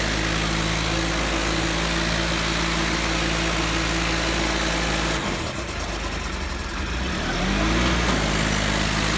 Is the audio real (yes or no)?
yes